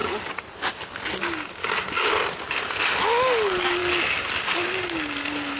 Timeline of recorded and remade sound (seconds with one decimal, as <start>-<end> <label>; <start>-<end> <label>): 0.0-5.6 recorded